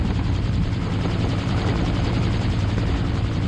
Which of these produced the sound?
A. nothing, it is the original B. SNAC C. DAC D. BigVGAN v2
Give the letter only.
D